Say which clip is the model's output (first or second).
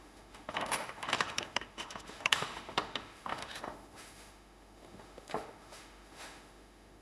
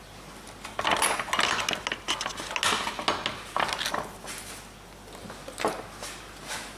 first